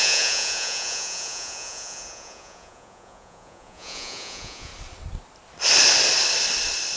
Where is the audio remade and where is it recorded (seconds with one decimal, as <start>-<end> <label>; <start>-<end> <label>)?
0.0-4.7 remade; 4.7-7.0 recorded